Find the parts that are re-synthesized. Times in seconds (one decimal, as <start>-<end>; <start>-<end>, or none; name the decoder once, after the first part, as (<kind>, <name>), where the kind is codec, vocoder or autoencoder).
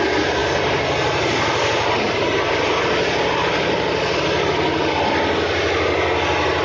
none